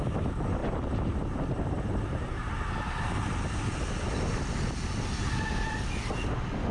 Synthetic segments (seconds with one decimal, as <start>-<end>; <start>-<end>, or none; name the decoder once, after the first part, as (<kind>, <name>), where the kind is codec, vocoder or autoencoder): 0.6-2.5 (vocoder, BigVGAN v2)